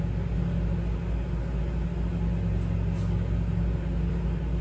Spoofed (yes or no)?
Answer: no